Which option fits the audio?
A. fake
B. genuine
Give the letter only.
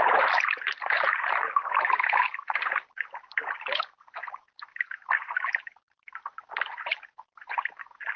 A